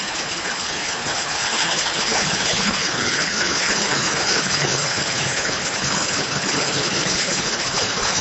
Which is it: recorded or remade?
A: remade